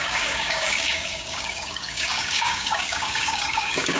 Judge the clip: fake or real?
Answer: fake